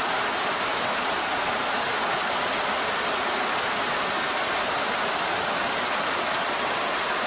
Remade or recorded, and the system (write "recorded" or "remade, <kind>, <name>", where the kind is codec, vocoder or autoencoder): recorded